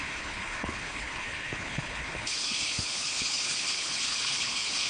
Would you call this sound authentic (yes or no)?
no